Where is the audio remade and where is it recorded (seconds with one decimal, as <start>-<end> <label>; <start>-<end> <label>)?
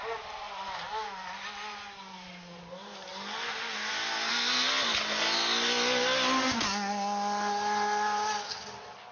0.0-9.1 recorded